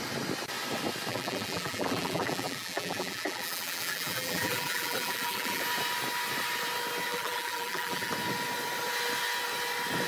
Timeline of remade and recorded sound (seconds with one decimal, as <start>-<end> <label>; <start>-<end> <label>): 0.0-1.1 recorded; 1.1-5.6 remade; 5.6-7.1 recorded; 7.1-8.1 remade; 8.1-10.1 recorded